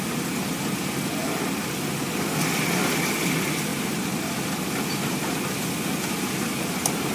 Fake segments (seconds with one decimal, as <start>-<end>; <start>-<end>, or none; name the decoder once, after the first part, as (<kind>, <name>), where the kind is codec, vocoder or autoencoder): 1.2-2.0 (vocoder, BigVGAN v2); 3.7-7.1